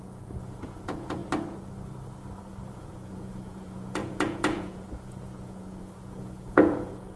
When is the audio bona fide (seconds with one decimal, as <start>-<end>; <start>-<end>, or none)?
1.2-2.7